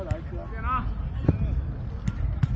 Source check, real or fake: real